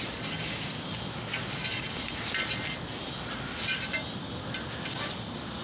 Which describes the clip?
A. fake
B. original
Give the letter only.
B